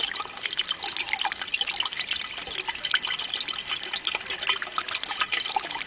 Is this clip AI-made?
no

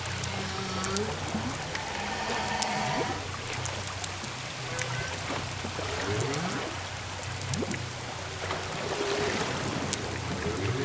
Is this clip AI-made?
no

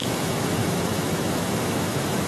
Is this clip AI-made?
yes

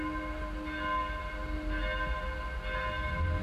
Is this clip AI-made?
no